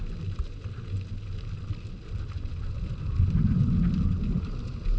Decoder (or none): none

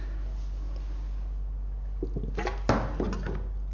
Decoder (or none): none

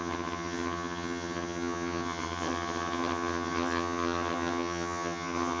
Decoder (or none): vocoder, HiFi-GAN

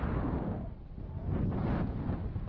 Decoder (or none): none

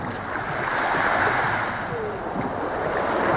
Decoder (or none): none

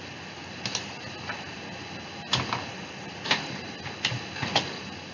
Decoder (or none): none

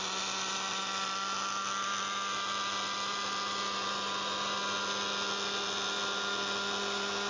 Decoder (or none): none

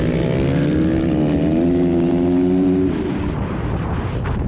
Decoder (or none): none